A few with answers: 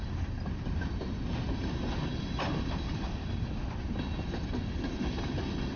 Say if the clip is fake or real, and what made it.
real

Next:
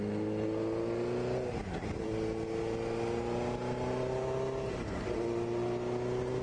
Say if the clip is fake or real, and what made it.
real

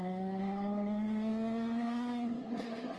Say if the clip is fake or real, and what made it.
fake, codec, SNAC